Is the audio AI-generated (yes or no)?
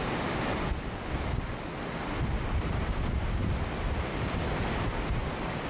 no